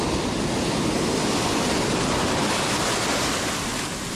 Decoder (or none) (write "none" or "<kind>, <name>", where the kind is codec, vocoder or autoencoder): none